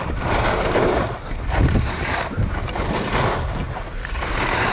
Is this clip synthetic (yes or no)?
no